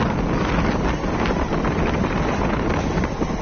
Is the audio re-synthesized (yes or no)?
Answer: no